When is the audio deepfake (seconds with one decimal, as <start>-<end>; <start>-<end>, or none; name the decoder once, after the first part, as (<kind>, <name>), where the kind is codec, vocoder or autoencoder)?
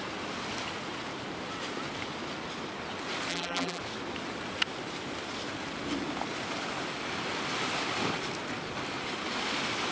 3.3-3.8 (vocoder, BigVGAN v2)